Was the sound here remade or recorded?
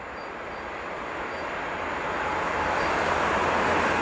recorded